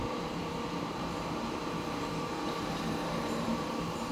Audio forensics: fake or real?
fake